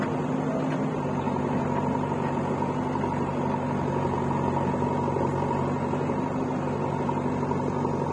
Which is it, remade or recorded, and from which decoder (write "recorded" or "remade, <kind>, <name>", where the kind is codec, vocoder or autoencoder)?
recorded